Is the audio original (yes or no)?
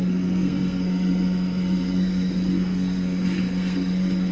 no